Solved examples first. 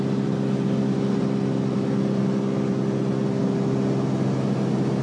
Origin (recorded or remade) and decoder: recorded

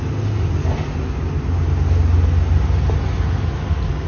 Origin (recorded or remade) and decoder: recorded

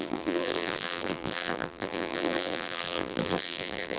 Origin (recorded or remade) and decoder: remade, vocoder, BigVGAN v2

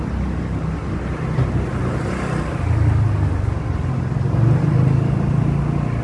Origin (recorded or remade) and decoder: recorded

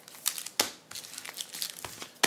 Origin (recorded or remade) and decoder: recorded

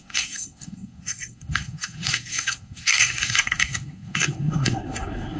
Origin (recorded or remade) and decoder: remade, codec, SNAC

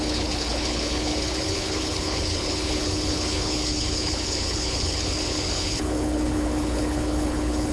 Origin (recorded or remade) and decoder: remade, codec, HILCodec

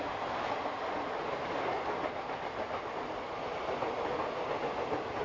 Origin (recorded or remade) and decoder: recorded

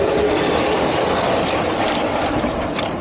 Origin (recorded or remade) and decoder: recorded